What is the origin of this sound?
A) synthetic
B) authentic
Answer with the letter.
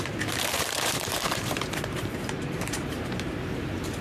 A